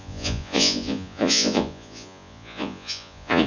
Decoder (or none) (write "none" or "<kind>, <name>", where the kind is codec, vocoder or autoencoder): vocoder, Vocos